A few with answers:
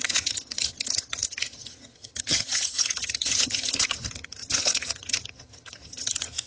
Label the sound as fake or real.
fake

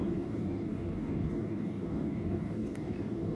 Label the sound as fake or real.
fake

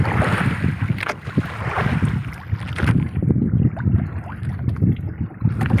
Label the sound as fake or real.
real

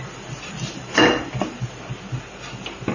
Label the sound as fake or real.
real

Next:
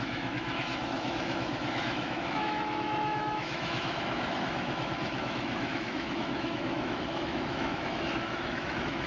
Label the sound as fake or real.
fake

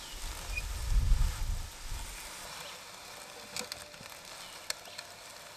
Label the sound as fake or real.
real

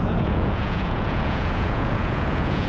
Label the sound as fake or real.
fake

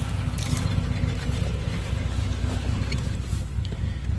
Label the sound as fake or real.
real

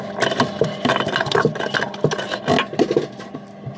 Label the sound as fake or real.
real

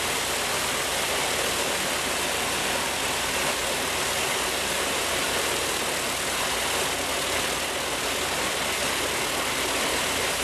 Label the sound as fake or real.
real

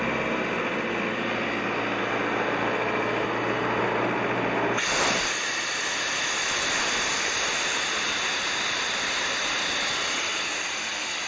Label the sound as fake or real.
real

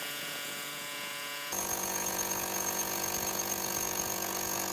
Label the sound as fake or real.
fake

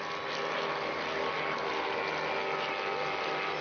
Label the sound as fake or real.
real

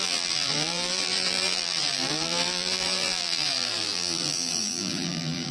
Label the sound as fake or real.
fake